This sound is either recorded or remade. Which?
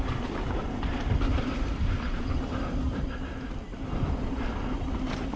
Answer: recorded